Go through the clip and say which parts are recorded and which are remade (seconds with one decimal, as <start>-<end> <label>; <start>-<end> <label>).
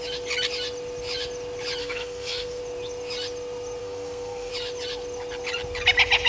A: 0.0-1.8 recorded; 1.8-2.6 remade; 2.6-3.8 recorded; 3.8-4.5 remade; 4.5-6.3 recorded